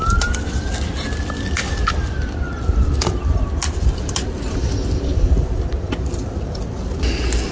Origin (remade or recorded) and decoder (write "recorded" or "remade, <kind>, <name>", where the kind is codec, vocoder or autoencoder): recorded